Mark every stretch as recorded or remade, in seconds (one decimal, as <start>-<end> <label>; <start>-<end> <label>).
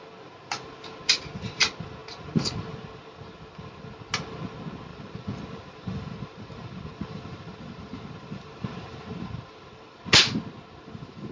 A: 0.0-4.9 recorded; 4.9-10.1 remade; 10.1-11.3 recorded